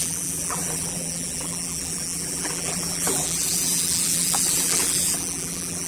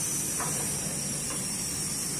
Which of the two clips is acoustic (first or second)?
second